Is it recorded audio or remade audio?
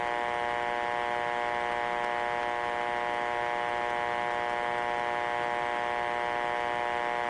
recorded